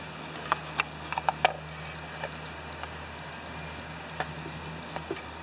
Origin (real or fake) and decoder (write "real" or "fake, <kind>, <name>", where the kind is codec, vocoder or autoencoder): real